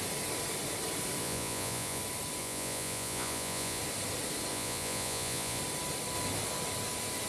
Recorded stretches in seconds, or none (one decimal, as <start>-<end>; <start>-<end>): 0.0-1.2; 2.0-2.4; 3.8-4.5; 5.6-7.3